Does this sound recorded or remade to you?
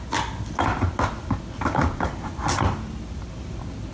recorded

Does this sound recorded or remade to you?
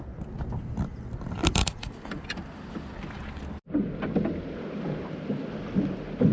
recorded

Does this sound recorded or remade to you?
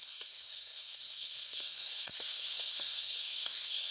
remade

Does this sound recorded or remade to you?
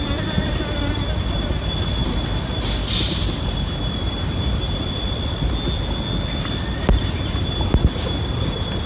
recorded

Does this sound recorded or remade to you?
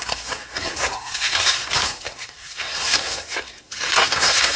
remade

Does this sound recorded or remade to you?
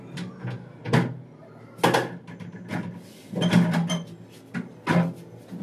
recorded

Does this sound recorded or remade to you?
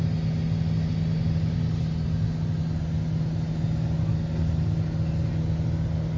recorded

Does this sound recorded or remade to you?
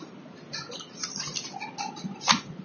recorded